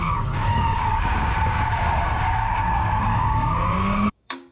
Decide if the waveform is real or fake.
fake